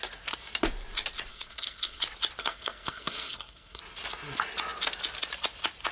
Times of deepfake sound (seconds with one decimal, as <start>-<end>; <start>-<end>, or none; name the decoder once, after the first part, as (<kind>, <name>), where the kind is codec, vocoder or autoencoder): 1.3-2.0 (codec, SNAC); 2.4-3.8